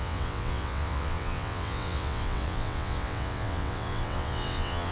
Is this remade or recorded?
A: remade